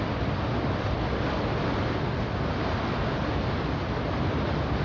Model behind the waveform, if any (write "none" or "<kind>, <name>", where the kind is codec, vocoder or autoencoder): none